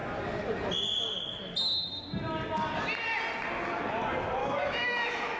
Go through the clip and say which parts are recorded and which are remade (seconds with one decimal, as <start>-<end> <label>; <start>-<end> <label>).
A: 0.0-4.4 recorded; 4.4-5.4 remade